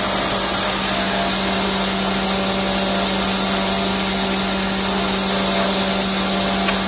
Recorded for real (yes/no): yes